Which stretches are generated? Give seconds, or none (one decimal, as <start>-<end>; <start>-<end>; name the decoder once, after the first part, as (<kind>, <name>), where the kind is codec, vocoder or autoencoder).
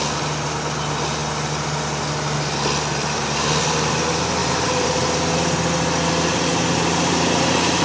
4.4-5.3 (vocoder, BigVGAN v2); 6.5-7.8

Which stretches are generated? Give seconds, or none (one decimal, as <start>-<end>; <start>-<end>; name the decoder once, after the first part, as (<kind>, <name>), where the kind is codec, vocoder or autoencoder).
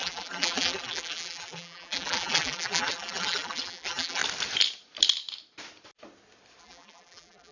0.0-4.2 (vocoder, BigVGAN v2); 6.6-7.5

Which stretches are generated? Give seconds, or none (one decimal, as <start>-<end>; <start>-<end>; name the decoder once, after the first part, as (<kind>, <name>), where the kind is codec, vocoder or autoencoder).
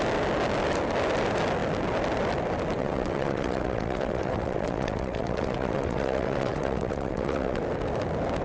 2.8-7.6 (vocoder, WaveNeXt)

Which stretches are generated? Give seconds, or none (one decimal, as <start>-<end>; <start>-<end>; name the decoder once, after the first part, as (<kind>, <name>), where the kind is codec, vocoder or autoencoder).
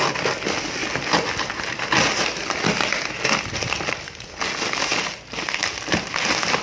none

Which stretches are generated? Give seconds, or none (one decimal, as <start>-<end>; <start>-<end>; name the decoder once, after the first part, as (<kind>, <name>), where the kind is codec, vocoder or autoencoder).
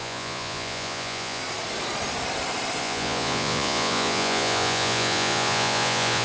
0.0-1.4 (vocoder, Vocos); 2.8-6.2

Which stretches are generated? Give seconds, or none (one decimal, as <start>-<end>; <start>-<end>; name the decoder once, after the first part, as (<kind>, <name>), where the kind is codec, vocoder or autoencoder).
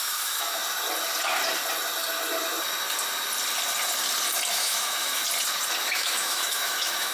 0.0-0.6 (autoencoder, DAC-VAE); 4.5-5.2; 5.8-7.1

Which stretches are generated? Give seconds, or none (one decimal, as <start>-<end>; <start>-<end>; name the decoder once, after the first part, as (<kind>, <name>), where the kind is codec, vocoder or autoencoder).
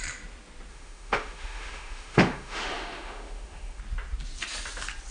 0.7-3.8 (autoencoder, DAC-VAE)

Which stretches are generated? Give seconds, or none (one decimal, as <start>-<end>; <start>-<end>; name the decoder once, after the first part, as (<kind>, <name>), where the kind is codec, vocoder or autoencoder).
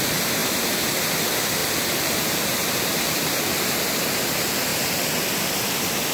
0.4-1.0 (vocoder, BigVGAN v2); 1.6-3.3; 4.7-5.2